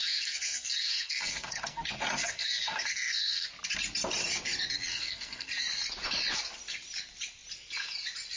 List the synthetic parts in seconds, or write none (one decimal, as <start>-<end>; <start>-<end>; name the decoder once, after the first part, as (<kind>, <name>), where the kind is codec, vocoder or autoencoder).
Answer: 0.0-1.8 (codec, SNAC); 2.2-3.5; 4.9-5.5